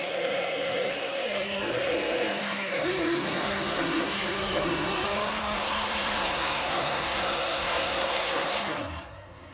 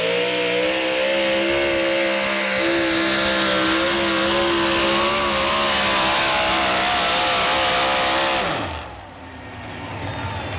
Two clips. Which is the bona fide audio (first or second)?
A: second